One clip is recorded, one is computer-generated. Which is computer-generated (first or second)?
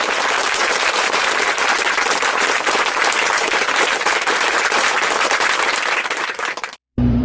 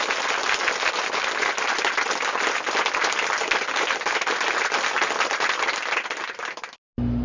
first